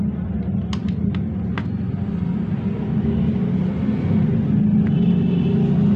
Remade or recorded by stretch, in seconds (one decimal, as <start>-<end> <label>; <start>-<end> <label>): 0.0-6.0 recorded